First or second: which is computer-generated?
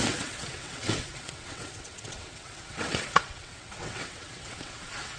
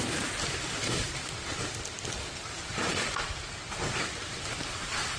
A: first